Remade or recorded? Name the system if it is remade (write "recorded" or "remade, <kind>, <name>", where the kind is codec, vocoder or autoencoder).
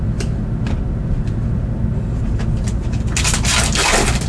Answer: recorded